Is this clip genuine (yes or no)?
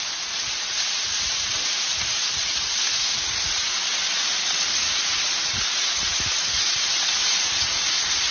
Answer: no